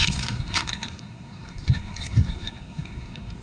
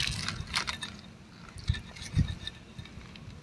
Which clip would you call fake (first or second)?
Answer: first